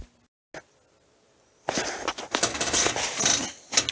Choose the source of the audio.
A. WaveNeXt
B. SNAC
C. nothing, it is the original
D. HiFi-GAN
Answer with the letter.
C